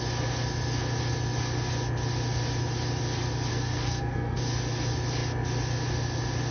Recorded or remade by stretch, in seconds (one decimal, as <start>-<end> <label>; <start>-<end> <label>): 0.0-3.5 recorded; 3.5-4.4 remade; 4.4-6.5 recorded